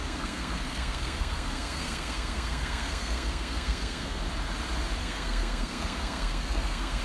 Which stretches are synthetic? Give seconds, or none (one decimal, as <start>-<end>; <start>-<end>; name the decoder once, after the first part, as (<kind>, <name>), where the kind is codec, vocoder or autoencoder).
0.0-4.2 (codec, SNAC); 5.0-7.0